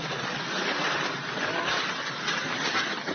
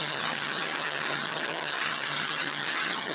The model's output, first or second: second